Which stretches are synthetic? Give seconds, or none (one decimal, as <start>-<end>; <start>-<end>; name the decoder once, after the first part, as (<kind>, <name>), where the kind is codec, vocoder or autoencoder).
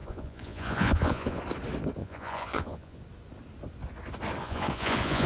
0.0-1.4 (vocoder, Vocos); 2.0-3.0; 4.4-5.3